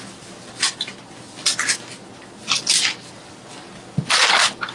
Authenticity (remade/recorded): recorded